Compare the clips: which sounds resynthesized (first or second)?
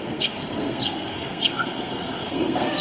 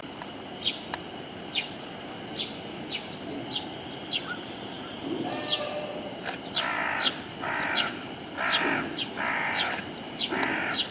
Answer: first